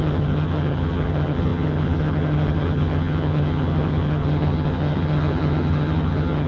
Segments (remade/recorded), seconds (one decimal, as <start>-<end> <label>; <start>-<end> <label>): 0.0-6.5 remade